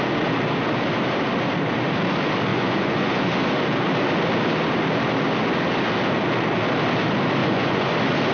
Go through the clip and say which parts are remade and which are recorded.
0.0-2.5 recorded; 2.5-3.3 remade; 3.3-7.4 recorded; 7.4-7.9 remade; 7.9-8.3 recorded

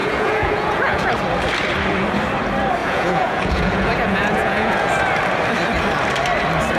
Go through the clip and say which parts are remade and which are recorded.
0.0-1.1 remade; 1.1-2.8 recorded; 2.8-4.9 remade; 4.9-6.8 recorded

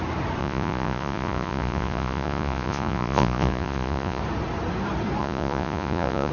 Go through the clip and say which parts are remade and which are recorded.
0.0-0.4 recorded; 0.4-4.2 remade; 4.2-5.2 recorded; 5.2-6.3 remade